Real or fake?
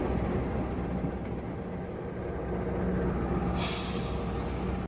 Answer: real